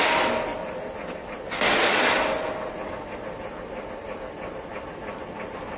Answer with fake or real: real